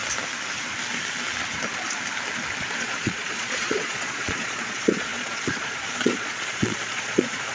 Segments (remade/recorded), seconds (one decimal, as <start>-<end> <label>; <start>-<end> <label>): 0.0-2.6 recorded; 2.6-7.5 remade